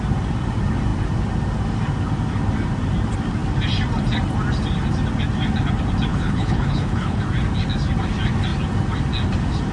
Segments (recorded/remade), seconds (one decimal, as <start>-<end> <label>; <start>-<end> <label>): 0.0-6.1 recorded; 6.1-7.2 remade; 7.2-9.7 recorded